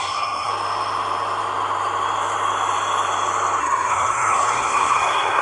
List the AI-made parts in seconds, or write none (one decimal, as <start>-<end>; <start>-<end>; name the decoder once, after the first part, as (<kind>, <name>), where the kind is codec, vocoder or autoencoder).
0.0-0.5 (codec, SNAC); 3.6-5.4